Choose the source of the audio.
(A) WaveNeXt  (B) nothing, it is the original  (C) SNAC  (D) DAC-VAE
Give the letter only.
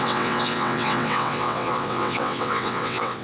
A